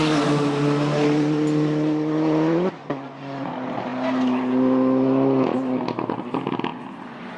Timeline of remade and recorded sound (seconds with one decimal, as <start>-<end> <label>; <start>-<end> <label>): 0.0-2.8 recorded; 2.8-3.5 remade; 3.5-6.7 recorded; 6.7-7.4 remade

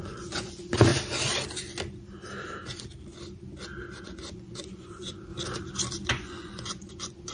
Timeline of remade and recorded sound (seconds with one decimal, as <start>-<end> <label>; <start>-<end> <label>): 0.0-0.9 remade; 0.9-4.0 recorded; 4.0-5.3 remade; 5.3-6.1 recorded; 6.1-7.3 remade

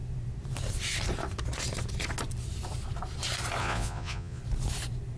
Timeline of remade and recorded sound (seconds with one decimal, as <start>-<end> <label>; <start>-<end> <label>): 0.0-3.6 recorded; 3.6-4.4 remade; 4.4-5.2 recorded

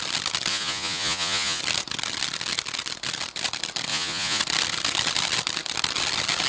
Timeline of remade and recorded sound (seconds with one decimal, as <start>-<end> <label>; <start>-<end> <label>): 0.0-0.5 recorded; 0.5-1.6 remade; 1.6-3.9 recorded; 3.9-4.4 remade; 4.4-6.5 recorded

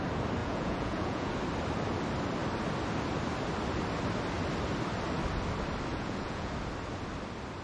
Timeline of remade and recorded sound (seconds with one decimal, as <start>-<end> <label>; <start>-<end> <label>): 0.0-0.4 recorded; 0.4-1.3 remade; 1.3-5.9 recorded; 5.9-6.5 remade; 6.5-7.6 recorded

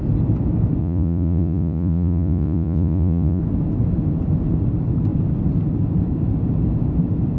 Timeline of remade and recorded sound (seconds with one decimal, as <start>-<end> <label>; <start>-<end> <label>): 0.0-0.8 recorded; 0.8-3.4 remade; 3.4-7.4 recorded

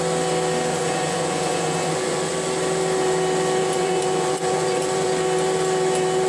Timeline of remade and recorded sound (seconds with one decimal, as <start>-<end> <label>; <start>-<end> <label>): 0.0-0.7 recorded; 0.7-2.3 remade; 2.3-3.6 recorded; 3.6-5.1 remade; 5.1-6.3 recorded

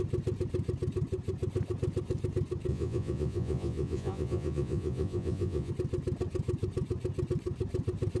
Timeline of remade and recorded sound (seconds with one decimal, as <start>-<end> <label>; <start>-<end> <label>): 0.0-2.7 recorded; 2.7-5.7 remade; 5.7-8.2 recorded